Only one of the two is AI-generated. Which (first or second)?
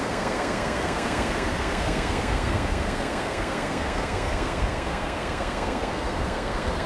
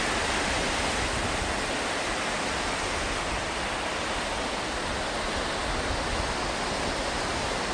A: first